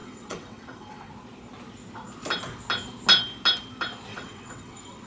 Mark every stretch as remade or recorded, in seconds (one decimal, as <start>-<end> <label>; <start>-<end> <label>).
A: 0.0-1.1 remade; 1.1-4.1 recorded; 4.1-5.1 remade